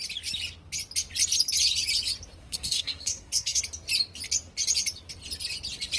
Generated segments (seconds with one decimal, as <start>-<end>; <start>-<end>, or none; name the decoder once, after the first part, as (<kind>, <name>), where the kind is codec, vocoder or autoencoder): 2.4-3.6 (codec, SNAC)